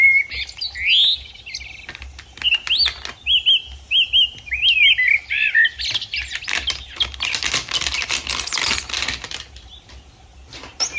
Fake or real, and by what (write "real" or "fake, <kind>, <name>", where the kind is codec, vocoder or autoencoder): real